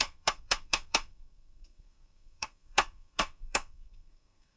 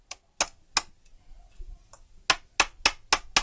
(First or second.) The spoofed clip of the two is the first